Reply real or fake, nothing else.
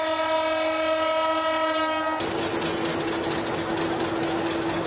real